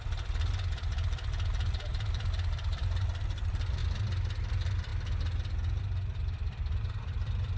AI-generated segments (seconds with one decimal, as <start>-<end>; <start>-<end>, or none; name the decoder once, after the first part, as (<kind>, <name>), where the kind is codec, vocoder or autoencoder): 0.0-3.8 (vocoder, BigVGAN v2); 4.5-4.9; 5.8-7.6